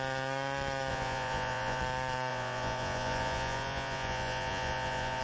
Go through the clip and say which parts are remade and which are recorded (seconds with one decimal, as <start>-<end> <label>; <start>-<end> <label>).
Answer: 0.0-0.9 recorded; 0.9-1.8 remade; 1.8-2.3 recorded; 2.3-5.2 remade